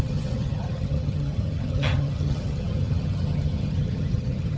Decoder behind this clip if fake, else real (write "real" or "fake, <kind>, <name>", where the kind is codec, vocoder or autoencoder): fake, vocoder, HiFi-GAN